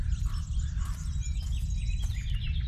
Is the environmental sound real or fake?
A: real